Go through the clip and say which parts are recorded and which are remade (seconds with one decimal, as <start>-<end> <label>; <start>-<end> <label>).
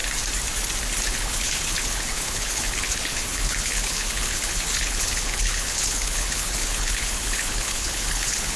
0.0-1.0 recorded; 1.0-8.6 remade